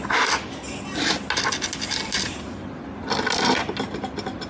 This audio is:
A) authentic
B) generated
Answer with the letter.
A